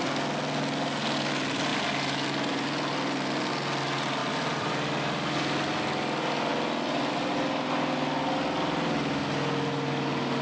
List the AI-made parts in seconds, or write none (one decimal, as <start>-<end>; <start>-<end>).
4.2-4.7